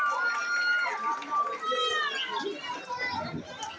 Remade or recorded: recorded